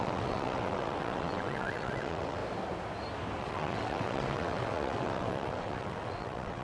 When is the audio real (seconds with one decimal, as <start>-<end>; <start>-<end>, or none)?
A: 2.4-3.4